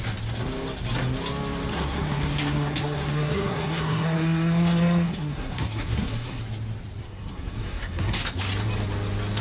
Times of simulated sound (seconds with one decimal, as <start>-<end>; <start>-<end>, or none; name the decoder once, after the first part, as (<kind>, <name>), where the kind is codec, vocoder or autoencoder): 1.7-6.4 (codec, SNAC); 7.0-8.2